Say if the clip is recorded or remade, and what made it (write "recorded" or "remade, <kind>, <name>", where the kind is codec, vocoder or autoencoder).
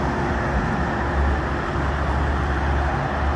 recorded